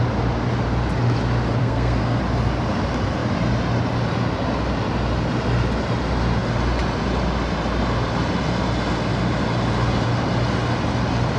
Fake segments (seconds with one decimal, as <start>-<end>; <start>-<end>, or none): 1.6-2.2